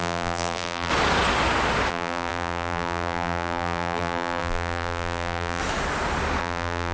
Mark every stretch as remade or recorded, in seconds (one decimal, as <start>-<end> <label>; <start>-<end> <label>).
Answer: 0.0-0.9 remade; 0.9-1.9 recorded; 1.9-5.6 remade; 5.6-6.4 recorded; 6.4-6.9 remade